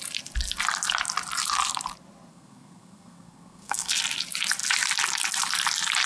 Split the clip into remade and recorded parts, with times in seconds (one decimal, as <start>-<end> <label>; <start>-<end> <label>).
0.0-2.3 recorded; 2.3-3.9 remade; 3.9-6.1 recorded